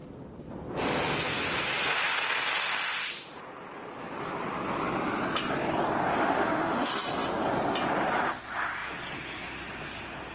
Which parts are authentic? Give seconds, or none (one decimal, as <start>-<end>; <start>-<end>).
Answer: 0.0-6.1; 6.9-10.3